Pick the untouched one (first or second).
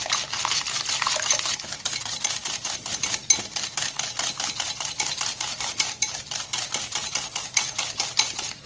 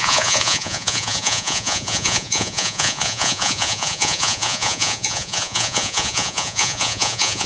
first